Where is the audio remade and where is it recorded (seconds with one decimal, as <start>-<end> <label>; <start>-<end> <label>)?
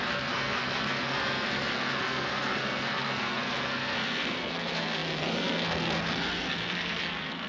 0.0-7.5 remade